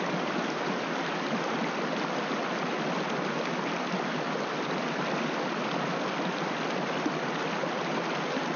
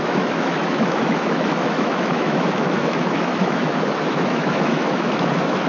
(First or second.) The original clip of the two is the first